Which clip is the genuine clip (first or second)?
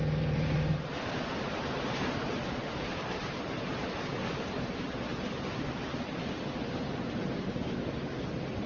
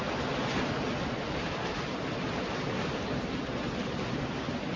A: second